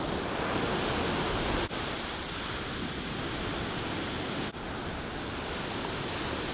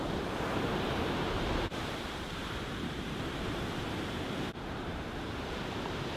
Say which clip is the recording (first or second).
first